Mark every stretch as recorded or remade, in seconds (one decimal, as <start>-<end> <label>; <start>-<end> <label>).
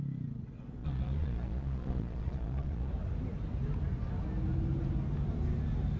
0.0-0.8 recorded; 0.8-2.9 remade; 2.9-6.0 recorded